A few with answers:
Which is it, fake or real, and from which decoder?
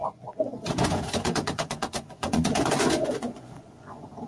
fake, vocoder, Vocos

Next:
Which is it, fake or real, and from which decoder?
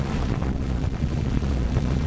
fake, vocoder, Vocos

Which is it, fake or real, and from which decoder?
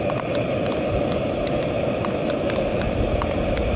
real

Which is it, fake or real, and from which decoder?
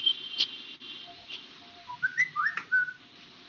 real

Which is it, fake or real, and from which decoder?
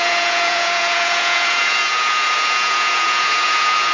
fake, vocoder, Vocos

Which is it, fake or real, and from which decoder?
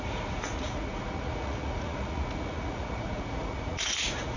fake, vocoder, Vocos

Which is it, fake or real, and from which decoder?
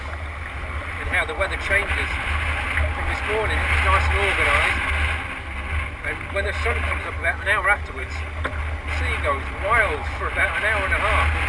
real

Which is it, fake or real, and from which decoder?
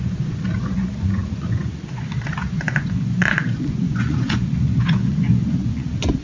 fake, vocoder, Vocos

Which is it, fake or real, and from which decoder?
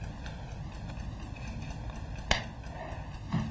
real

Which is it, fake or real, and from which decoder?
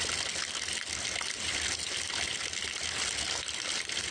real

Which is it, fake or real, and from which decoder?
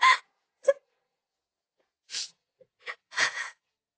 fake, vocoder, Vocos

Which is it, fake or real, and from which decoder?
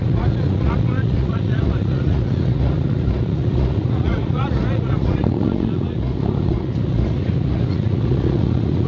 fake, vocoder, Vocos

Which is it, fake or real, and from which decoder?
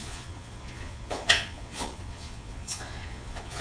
fake, vocoder, Vocos